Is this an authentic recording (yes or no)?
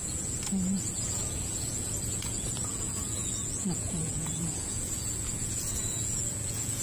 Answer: no